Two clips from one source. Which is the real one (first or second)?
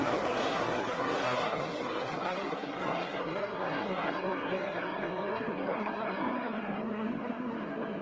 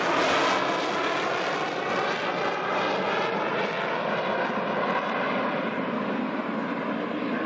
second